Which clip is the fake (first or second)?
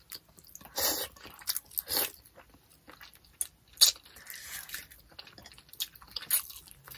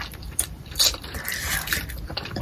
second